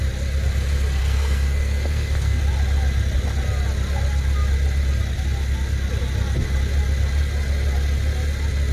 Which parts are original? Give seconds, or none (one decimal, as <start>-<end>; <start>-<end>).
0.0-1.0; 2.4-8.7